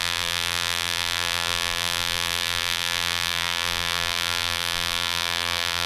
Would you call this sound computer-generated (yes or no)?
yes